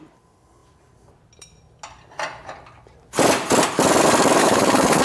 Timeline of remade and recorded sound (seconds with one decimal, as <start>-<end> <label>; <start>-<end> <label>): 0.0-4.4 recorded; 4.4-5.0 remade